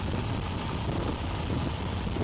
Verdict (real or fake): real